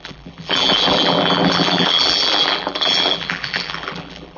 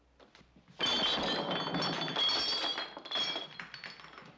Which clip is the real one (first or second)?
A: second